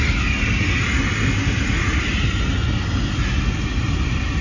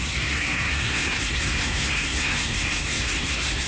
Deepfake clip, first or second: second